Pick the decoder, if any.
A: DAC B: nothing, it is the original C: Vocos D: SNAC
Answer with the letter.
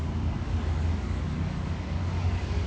A